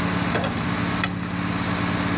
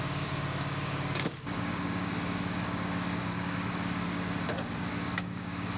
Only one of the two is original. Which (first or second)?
first